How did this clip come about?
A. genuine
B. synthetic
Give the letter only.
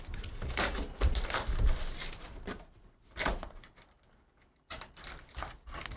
B